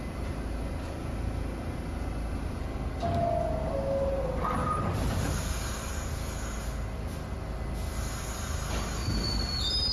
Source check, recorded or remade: recorded